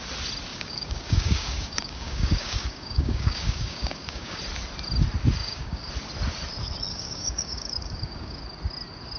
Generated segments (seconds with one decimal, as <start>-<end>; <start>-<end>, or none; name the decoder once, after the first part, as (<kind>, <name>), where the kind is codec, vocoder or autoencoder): 0.5-4.4 (codec, DAC); 5.4-5.9; 6.9-8.4

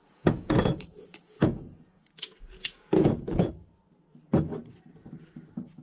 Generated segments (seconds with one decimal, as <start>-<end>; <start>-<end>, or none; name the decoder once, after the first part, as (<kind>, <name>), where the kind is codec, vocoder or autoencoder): 0.0-3.5 (vocoder, Vocos)